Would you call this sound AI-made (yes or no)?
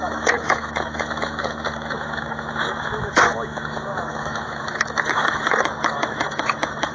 yes